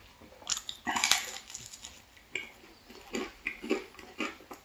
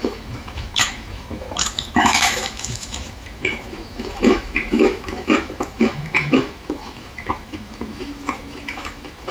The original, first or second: first